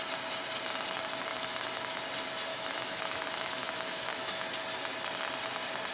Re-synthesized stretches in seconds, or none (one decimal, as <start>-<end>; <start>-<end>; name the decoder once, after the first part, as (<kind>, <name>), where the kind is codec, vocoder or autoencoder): 1.3-2.0 (autoencoder, DAC-VAE); 2.5-4.4